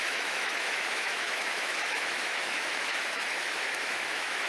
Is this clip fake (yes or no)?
yes